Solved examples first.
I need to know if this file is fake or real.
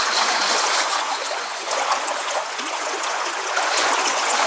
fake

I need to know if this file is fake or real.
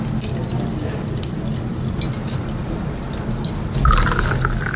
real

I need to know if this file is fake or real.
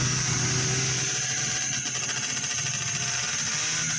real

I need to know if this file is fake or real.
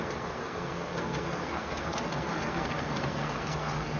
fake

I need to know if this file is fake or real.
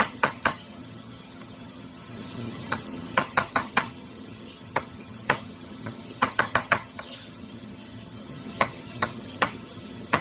fake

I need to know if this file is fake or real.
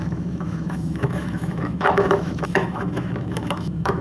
fake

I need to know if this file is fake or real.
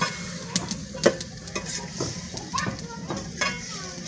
real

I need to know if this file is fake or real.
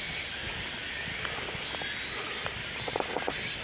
real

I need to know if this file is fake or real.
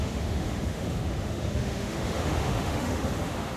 fake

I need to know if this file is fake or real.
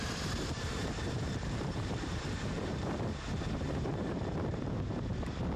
fake